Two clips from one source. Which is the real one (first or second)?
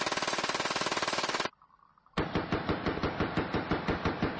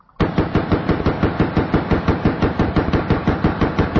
second